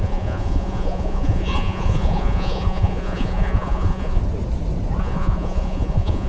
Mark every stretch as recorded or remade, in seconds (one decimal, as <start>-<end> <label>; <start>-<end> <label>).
0.0-4.2 remade; 4.2-5.0 recorded; 5.0-6.3 remade